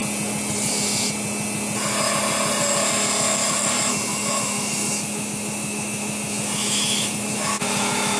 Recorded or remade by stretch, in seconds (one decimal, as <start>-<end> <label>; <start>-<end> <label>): 0.0-4.1 recorded; 4.1-8.2 remade